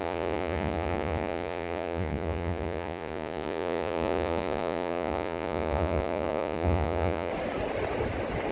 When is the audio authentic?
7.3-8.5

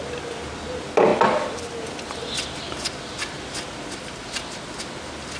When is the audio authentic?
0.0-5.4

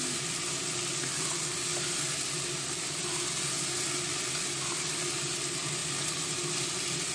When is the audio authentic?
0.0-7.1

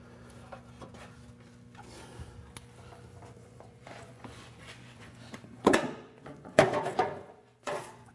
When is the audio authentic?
0.0-3.4

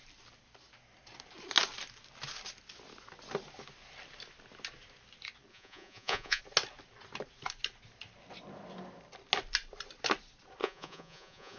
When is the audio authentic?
0.0-5.5; 6.4-10.6